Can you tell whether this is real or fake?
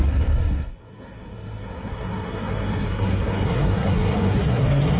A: fake